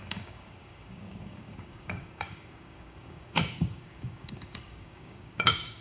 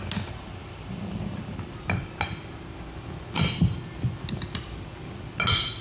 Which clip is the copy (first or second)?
first